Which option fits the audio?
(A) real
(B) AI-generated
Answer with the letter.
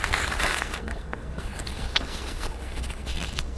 B